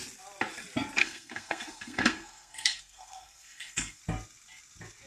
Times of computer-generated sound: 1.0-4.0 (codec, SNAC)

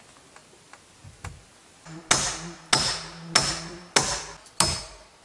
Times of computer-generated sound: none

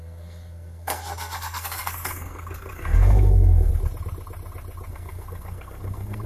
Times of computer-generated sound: 0.0-3.7 (codec, SNAC); 4.9-6.3

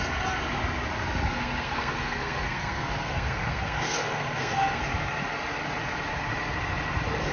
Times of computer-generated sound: 1.3-4.8 (codec, SNAC)

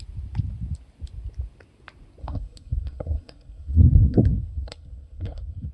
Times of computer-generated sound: 2.2-5.7 (codec, SNAC)

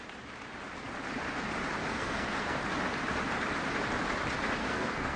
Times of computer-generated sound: 1.9-2.6 (codec, SNAC); 4.6-5.2

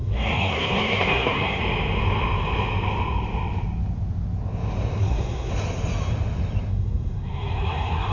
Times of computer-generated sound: 0.0-1.6 (codec, SNAC); 5.0-5.5; 6.7-8.1